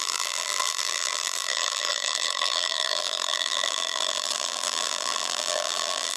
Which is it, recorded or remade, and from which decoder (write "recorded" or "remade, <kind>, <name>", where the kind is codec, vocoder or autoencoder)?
remade, vocoder, BigVGAN v2